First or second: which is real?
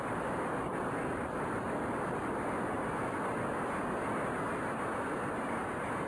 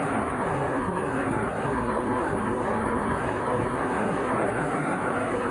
first